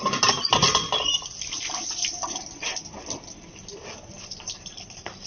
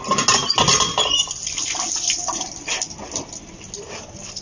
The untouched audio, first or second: second